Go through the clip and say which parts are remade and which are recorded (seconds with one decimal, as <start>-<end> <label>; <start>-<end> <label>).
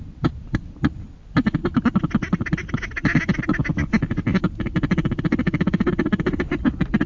0.0-5.4 recorded; 5.4-5.9 remade; 5.9-7.1 recorded